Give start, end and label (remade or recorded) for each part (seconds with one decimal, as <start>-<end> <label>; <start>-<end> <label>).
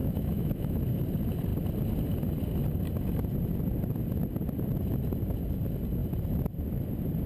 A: 0.0-0.8 remade; 0.8-7.3 recorded